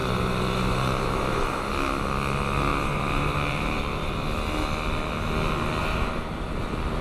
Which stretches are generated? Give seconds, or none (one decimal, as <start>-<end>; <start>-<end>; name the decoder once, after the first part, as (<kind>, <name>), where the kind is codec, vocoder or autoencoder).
0.0-1.7 (vocoder, BigVGAN v2); 2.7-4.1; 5.8-6.6